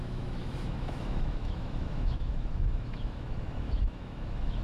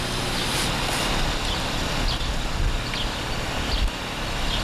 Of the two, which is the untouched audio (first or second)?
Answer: second